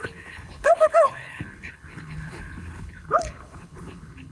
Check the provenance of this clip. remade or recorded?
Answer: remade